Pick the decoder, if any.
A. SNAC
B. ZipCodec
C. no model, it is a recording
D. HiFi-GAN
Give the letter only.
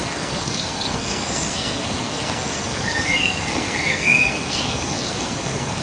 A